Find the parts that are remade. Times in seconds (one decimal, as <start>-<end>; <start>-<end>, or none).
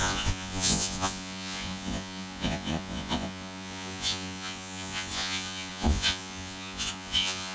0.0-7.5